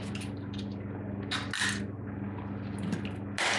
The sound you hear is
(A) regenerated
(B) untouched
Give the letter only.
B